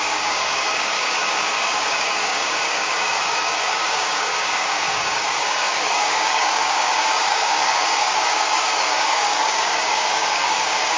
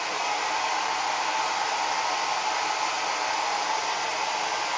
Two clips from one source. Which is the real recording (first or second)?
second